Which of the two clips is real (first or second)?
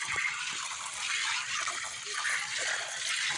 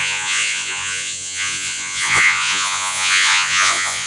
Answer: first